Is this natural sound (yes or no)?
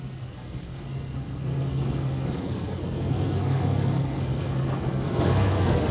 no